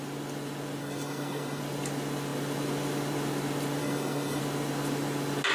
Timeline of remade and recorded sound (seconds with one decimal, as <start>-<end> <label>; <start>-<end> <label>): 0.0-0.8 recorded; 0.8-1.6 remade; 1.6-3.8 recorded; 3.8-4.4 remade; 4.4-5.5 recorded